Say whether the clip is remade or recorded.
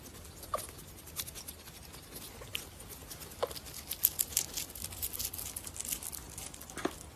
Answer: recorded